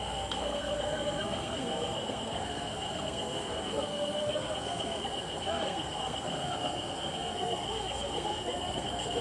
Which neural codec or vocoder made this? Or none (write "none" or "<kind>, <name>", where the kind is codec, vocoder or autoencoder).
codec, SNAC